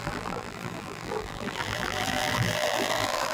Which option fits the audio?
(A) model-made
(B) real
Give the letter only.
A